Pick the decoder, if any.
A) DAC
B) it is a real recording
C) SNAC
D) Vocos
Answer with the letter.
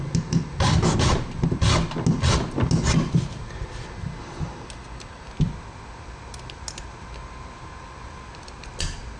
B